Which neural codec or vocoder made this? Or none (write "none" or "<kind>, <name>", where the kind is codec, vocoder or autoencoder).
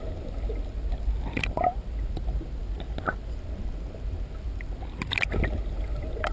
none